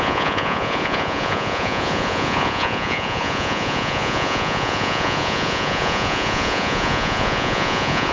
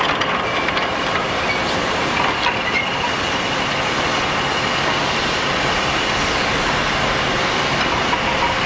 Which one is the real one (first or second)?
second